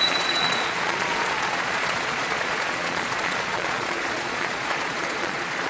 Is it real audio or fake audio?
fake